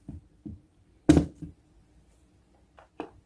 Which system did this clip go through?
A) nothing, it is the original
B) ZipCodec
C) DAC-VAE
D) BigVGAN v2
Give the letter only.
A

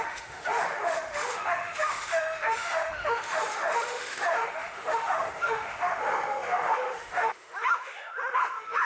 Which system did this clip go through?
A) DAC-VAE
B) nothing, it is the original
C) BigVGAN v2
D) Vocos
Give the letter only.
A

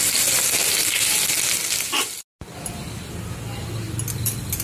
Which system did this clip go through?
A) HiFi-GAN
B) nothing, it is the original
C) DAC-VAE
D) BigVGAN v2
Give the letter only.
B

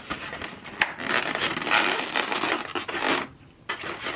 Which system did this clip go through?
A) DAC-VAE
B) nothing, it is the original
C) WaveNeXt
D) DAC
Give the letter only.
B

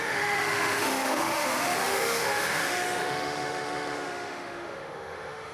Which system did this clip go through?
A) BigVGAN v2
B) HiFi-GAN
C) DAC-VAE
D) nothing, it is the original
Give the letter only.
C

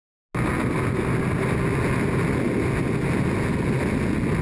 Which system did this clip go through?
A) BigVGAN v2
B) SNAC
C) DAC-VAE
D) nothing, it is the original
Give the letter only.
D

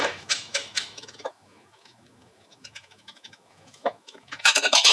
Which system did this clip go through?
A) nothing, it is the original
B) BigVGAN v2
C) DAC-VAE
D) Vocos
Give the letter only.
C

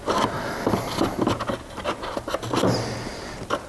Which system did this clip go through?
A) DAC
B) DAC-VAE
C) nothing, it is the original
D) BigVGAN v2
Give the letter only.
C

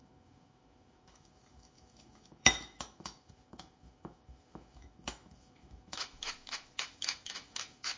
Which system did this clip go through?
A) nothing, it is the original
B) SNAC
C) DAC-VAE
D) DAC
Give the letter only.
C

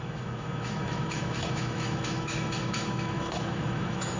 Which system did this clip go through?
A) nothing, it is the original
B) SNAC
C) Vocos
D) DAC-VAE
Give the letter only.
D